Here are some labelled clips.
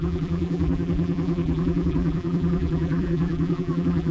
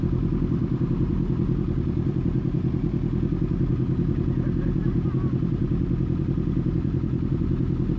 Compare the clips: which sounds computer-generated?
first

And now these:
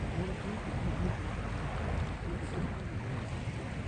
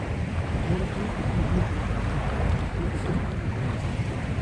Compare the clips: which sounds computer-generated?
second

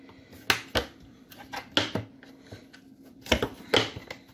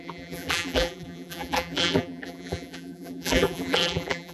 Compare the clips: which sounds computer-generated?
second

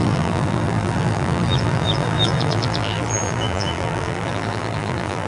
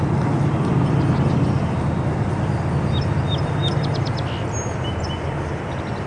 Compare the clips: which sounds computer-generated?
first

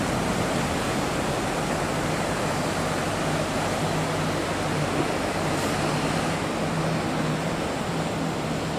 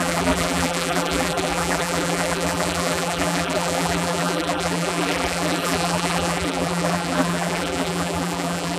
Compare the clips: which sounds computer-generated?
second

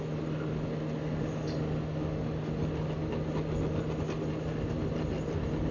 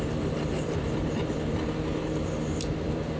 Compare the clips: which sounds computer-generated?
second